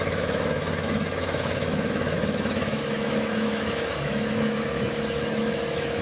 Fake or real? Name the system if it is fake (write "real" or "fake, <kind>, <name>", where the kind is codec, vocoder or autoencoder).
fake, autoencoder, DAC-VAE